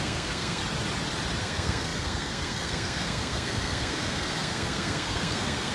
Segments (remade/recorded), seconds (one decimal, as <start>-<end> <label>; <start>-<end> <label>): 0.0-0.6 remade; 0.6-1.4 recorded; 1.4-5.7 remade